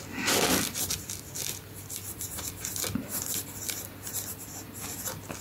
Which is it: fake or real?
real